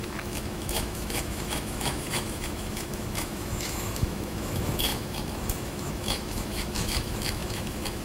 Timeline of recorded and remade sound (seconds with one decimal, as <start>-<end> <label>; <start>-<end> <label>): 0.0-8.0 remade